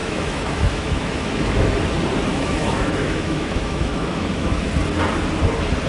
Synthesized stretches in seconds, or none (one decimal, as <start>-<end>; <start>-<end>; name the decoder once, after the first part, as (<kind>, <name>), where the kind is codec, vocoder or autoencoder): 0.0-1.7 (autoencoder, DAC-VAE); 2.3-4.7